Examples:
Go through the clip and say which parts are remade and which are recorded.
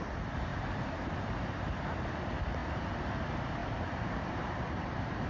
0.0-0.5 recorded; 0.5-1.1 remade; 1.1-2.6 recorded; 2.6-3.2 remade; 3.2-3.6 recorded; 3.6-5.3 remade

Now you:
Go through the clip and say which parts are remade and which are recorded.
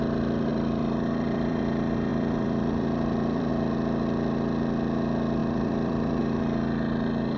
0.0-0.5 recorded; 0.5-1.6 remade; 1.6-2.1 recorded; 2.1-3.5 remade; 3.5-5.4 recorded; 5.4-6.2 remade; 6.2-7.4 recorded